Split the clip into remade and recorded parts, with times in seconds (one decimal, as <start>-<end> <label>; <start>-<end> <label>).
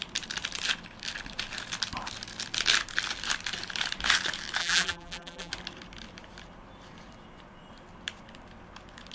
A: 0.0-4.6 recorded; 4.6-5.5 remade; 5.5-9.1 recorded